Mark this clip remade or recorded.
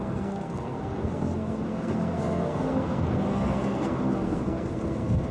remade